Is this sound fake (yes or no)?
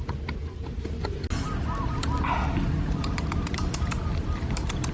no